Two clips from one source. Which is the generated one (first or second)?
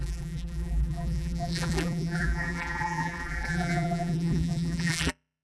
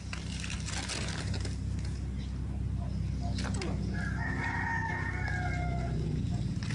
first